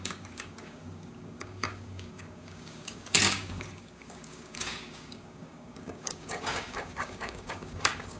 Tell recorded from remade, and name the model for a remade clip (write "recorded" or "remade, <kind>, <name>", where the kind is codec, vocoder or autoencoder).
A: remade, codec, DAC